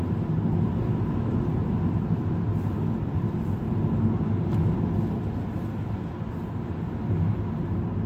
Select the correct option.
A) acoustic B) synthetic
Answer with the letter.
A